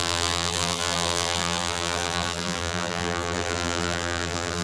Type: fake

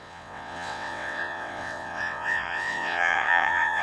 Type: fake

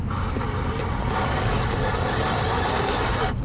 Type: real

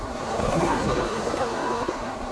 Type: fake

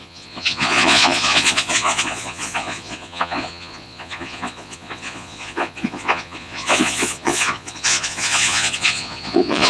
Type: fake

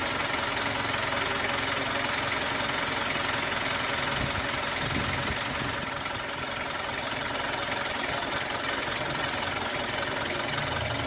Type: real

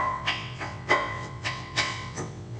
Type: fake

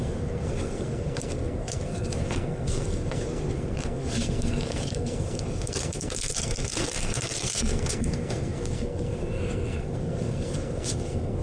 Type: fake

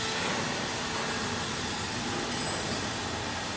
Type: real